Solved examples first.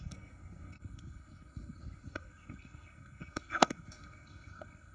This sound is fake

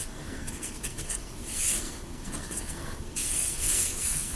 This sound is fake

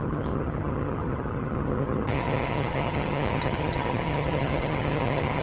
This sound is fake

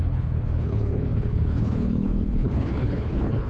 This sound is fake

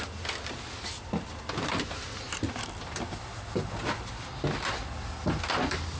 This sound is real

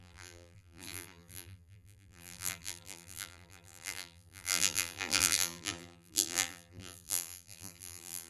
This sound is fake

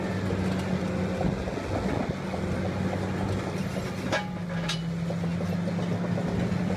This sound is real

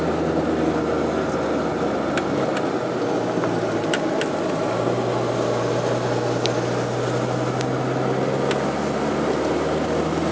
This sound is real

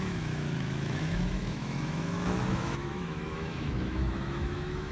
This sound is fake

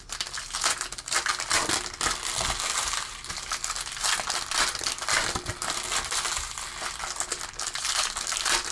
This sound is real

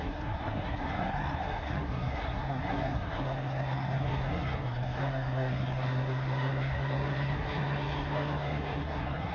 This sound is fake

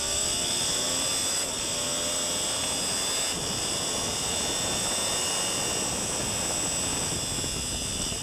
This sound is real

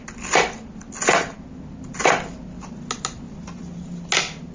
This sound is real